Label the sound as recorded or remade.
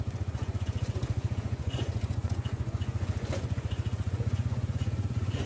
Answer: remade